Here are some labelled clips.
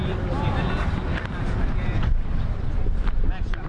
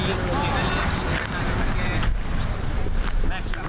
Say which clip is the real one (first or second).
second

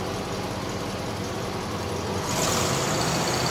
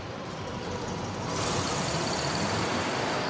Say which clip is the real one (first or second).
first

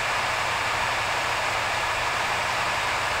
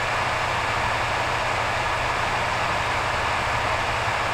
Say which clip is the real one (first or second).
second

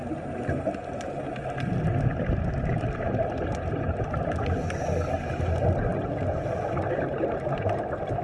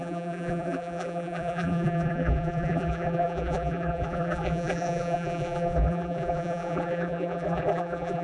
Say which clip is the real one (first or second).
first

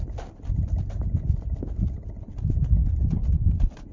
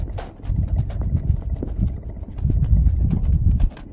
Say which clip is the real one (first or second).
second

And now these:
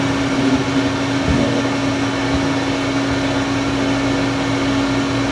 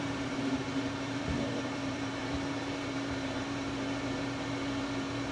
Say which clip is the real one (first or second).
first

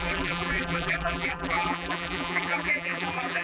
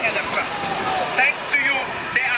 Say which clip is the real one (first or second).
second